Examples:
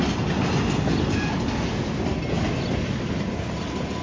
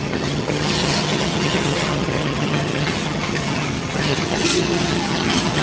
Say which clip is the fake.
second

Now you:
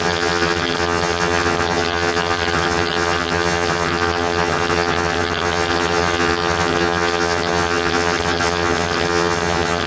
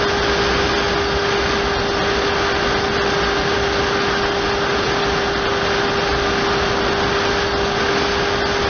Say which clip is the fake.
first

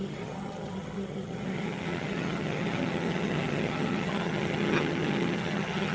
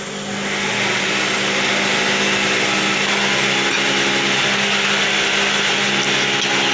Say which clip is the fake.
first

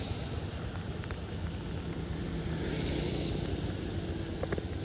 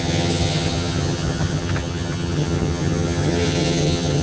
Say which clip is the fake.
second